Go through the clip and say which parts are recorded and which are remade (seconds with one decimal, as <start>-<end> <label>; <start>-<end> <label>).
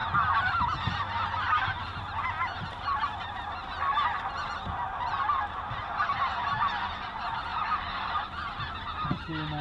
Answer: 0.0-7.5 recorded; 7.5-8.2 remade; 8.2-9.6 recorded